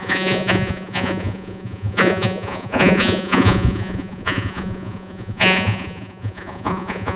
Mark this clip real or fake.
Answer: fake